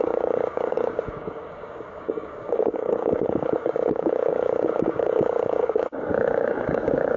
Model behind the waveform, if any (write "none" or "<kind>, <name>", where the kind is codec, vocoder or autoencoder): codec, DAC